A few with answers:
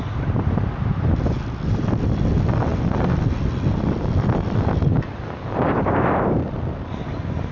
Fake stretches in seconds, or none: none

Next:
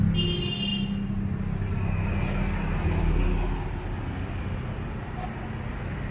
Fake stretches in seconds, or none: none

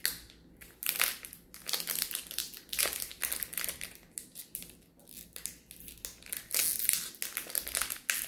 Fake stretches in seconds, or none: none

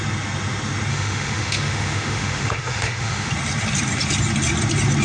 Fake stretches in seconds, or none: 0.9-3.3 (autoencoder, DAC-VAE)

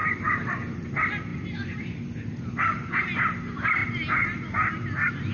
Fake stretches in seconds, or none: 0.5-3.8 (vocoder, BigVGAN v2)